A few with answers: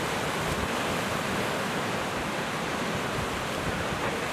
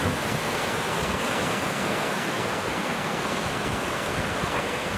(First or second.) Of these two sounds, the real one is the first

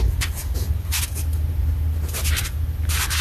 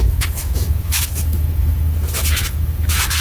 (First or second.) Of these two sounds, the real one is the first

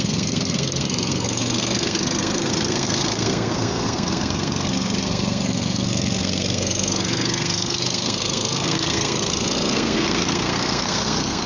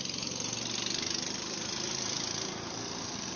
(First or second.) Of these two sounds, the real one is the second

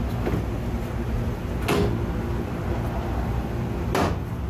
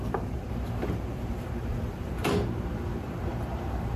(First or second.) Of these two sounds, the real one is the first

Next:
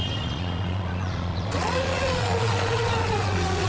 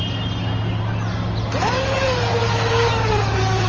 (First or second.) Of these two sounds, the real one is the second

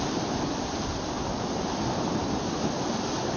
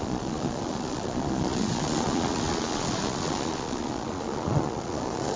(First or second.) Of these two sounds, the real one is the first